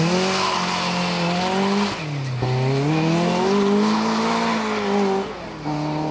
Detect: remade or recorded recorded